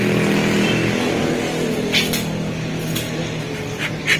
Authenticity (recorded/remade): recorded